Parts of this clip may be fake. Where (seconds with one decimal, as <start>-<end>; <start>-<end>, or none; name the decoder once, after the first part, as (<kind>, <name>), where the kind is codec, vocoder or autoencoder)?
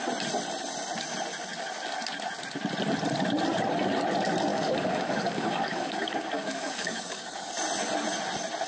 4.5-7.5 (codec, DAC)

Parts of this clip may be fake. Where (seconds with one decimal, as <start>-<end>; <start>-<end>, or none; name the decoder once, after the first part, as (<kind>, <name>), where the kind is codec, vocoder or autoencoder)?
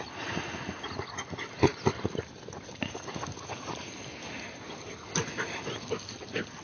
none